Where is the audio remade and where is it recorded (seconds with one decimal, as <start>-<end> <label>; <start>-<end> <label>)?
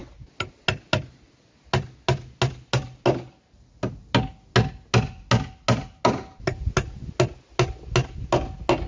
0.0-8.9 recorded